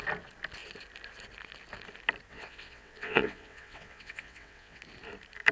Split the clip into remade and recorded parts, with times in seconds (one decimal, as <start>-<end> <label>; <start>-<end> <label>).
0.0-2.3 recorded; 2.3-4.8 remade; 4.8-5.5 recorded